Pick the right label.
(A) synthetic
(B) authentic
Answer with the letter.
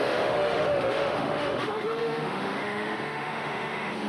A